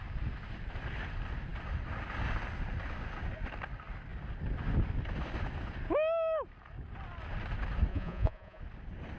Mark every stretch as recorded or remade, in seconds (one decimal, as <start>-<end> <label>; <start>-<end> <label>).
0.0-7.9 recorded; 7.9-8.6 remade; 8.6-9.2 recorded